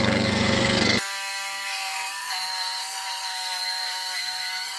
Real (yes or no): no